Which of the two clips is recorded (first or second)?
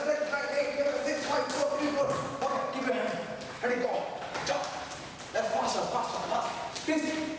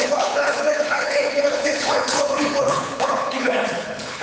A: first